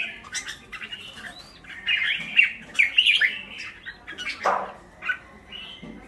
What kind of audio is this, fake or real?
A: real